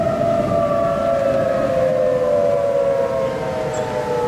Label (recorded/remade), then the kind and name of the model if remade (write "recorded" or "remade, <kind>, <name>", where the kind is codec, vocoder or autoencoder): recorded